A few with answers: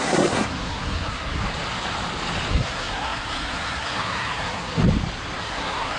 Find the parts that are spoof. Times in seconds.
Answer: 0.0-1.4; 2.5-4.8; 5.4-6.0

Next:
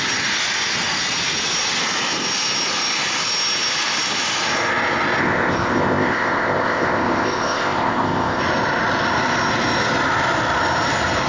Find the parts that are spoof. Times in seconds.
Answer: 5.2-8.4

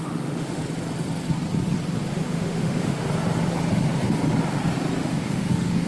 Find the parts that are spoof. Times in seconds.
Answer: 0.0-0.6; 2.1-3.0; 5.0-5.9

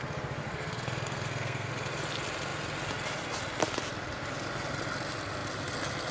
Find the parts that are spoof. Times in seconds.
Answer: 0.4-1.7